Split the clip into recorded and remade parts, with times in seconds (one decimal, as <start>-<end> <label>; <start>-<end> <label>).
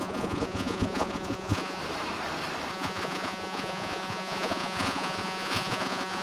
0.0-1.8 remade; 1.8-2.7 recorded; 2.7-6.2 remade